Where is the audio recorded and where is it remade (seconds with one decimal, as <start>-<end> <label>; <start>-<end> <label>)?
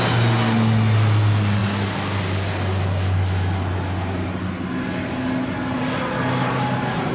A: 0.0-7.1 recorded